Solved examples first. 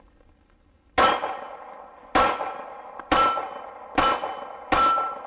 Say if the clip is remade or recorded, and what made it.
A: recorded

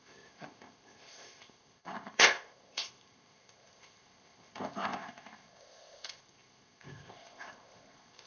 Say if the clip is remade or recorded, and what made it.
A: remade, codec, ZipCodec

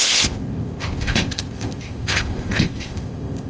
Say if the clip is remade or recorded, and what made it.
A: remade, codec, ZipCodec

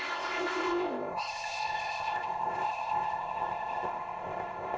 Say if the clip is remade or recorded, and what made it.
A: remade, codec, ZipCodec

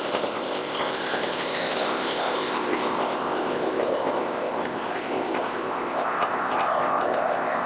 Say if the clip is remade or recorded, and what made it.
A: remade, codec, ZipCodec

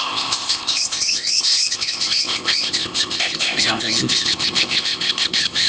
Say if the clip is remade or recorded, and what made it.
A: remade, codec, ZipCodec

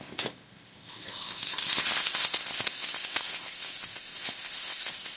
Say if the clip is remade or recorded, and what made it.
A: remade, codec, ZipCodec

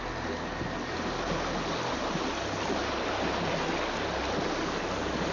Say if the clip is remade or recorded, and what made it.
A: recorded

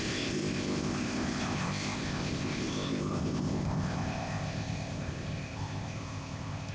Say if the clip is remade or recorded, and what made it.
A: remade, codec, ZipCodec